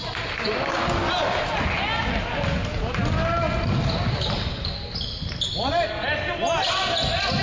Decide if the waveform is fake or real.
real